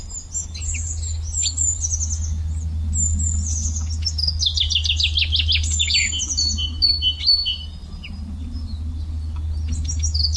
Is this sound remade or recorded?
recorded